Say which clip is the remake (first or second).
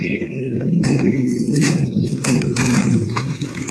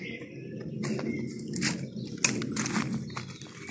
first